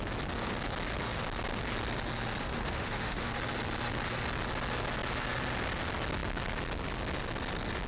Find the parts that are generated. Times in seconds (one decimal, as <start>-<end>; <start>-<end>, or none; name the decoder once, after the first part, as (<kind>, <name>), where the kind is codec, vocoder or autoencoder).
2.4-3.3 (autoencoder, DAC-VAE)